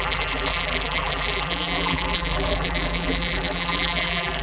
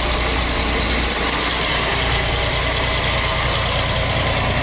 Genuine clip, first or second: second